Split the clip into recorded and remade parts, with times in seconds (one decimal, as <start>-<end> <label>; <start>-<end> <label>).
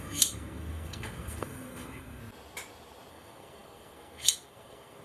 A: 0.0-2.2 remade; 2.2-3.1 recorded; 3.1-5.0 remade